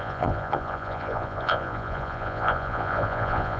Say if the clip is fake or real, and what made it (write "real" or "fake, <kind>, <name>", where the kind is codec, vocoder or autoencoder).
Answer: fake, vocoder, Vocos